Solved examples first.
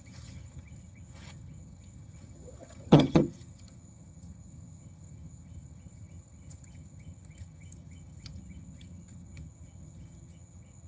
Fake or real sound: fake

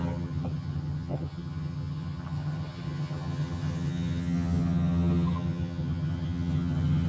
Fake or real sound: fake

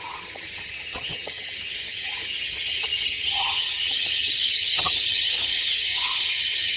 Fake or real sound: fake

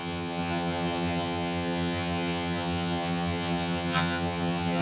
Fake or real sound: fake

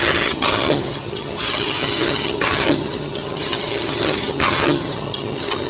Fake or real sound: fake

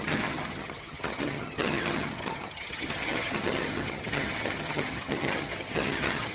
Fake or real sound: fake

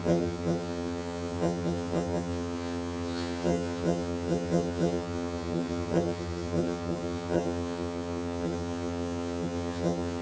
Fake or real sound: fake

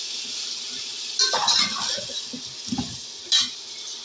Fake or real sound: real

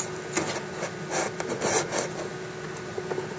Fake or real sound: real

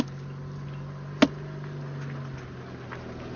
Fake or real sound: real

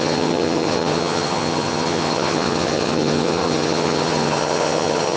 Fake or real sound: fake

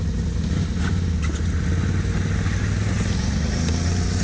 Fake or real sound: real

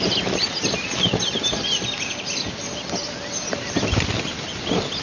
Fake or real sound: real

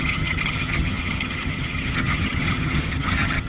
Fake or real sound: fake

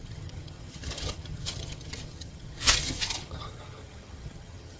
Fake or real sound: fake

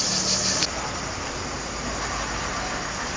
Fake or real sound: real